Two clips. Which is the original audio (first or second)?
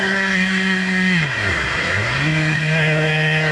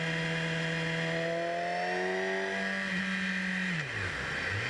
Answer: second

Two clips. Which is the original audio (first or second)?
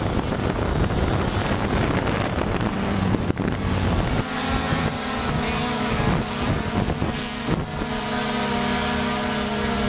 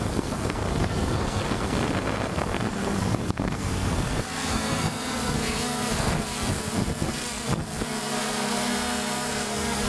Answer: first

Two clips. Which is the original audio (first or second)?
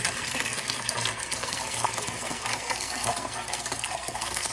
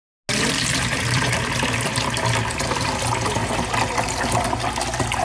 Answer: second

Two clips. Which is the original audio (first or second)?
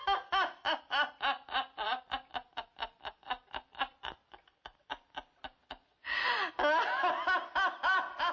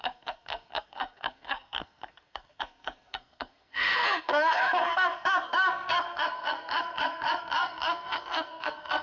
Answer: first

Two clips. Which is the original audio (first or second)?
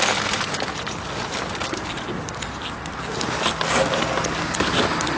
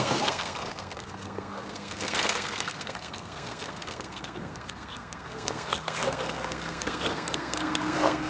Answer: first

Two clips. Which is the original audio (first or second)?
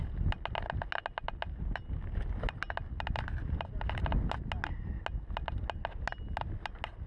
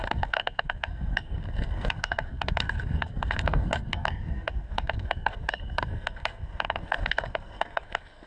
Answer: first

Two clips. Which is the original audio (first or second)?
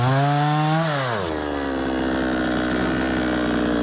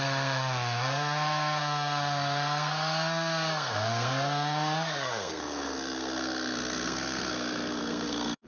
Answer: first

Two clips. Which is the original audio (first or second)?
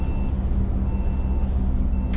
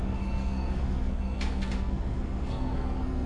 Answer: first